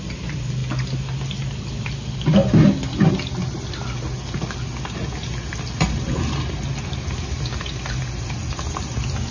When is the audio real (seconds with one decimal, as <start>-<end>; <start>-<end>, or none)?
0.0-9.3